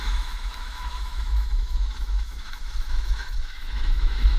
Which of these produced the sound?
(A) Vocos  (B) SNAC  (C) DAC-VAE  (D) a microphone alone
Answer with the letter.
C